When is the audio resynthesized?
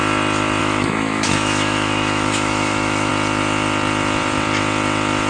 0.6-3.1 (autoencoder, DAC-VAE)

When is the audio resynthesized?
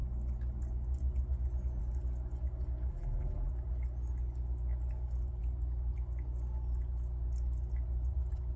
2.9-3.5 (vocoder, BigVGAN v2)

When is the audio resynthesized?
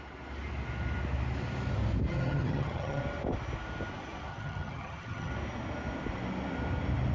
2.1-3.0 (vocoder, HiFi-GAN); 4.3-5.3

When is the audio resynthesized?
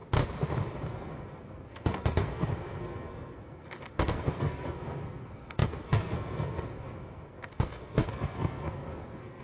0.9-9.4 (codec, SNAC)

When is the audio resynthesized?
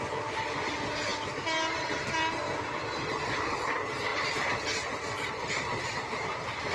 none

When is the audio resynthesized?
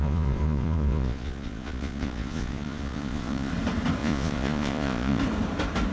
0.0-3.5 (vocoder, Vocos); 4.0-5.2